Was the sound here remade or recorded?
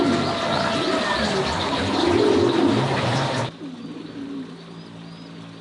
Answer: recorded